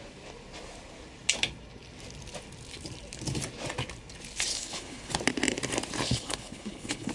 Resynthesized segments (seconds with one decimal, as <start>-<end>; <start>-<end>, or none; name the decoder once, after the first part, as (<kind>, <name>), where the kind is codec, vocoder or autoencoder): 4.5-5.1 (codec, HILCodec); 6.0-7.1

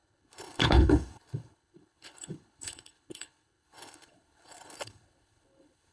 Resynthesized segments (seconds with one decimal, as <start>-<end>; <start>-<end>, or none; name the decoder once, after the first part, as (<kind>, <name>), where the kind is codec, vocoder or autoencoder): 0.0-5.9 (codec, HILCodec)

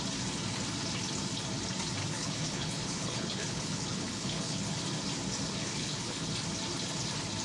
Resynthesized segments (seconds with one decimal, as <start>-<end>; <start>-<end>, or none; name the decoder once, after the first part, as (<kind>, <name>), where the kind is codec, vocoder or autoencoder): 2.0-4.8 (codec, HILCodec); 5.6-6.3

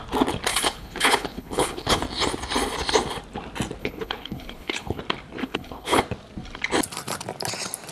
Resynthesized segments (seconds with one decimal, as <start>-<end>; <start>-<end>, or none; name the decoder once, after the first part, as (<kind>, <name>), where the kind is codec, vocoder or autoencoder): 0.5-2.0 (codec, HILCodec); 3.8-5.0; 5.4-6.0

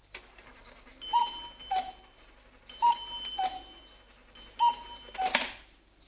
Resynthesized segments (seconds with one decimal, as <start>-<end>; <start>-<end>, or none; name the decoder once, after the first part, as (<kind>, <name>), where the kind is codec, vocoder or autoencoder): none

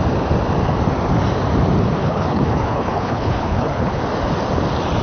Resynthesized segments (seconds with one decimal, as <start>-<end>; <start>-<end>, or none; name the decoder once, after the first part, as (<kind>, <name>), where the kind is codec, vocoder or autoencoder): 2.0-4.0 (codec, HILCodec)

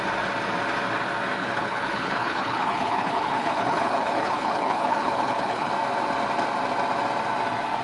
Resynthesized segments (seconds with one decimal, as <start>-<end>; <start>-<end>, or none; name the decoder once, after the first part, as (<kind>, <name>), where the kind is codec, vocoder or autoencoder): 1.4-5.7 (codec, HILCodec)

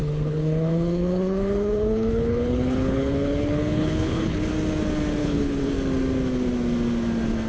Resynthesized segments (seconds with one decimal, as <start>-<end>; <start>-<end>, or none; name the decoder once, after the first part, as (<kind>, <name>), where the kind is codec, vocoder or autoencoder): 0.0-4.5 (codec, HILCodec); 5.2-5.7